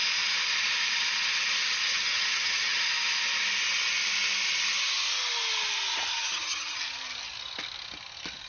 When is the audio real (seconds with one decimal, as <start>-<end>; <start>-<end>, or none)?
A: 0.0-1.9; 2.8-6.1; 6.8-8.5